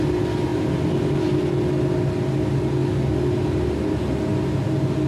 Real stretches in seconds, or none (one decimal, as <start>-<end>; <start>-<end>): 0.0-5.1